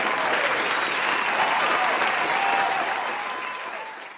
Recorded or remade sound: recorded